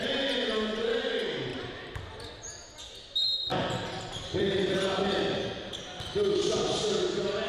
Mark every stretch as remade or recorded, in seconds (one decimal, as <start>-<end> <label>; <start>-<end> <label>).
0.0-1.5 recorded; 1.5-2.1 remade; 2.1-3.5 recorded; 3.5-4.9 remade; 4.9-7.5 recorded